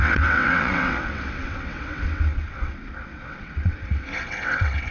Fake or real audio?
fake